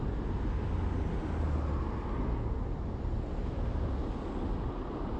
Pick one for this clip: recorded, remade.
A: recorded